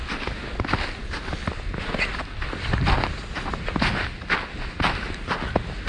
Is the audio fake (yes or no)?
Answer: no